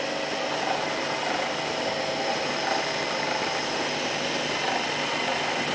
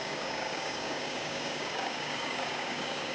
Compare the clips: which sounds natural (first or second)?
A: first